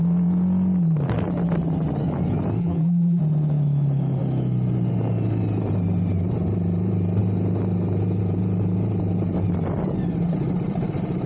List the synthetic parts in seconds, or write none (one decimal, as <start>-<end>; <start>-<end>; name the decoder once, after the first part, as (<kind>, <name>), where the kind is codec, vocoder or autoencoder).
2.6-3.2 (vocoder, BigVGAN v2)

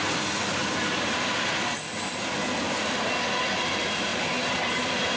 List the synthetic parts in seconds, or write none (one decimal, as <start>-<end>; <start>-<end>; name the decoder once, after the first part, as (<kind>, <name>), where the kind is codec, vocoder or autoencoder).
0.0-0.4 (vocoder, BigVGAN v2); 3.5-5.2

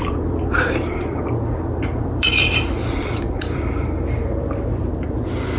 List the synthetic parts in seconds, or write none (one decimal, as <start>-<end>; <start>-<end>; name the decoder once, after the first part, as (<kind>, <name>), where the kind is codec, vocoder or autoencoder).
0.0-1.2 (vocoder, BigVGAN v2); 1.8-5.6

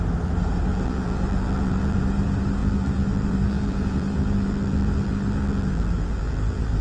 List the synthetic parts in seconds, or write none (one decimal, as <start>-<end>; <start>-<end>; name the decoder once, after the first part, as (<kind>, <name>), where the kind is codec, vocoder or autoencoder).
0.7-2.0 (vocoder, BigVGAN v2); 2.6-6.8

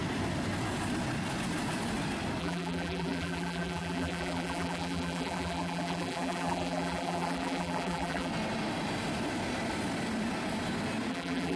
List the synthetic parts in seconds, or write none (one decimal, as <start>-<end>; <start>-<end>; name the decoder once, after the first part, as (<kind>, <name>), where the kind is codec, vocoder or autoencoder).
2.4-8.3 (vocoder, BigVGAN v2); 11.1-11.6

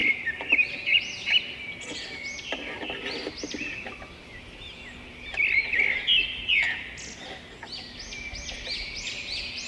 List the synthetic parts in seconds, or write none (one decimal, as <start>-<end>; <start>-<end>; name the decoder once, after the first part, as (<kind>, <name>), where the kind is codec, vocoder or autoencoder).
0.0-1.4 (vocoder, BigVGAN v2)

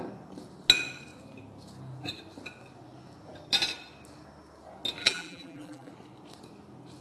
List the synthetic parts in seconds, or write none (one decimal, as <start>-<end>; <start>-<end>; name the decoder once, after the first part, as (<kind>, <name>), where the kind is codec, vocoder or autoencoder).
5.0-5.9 (vocoder, BigVGAN v2)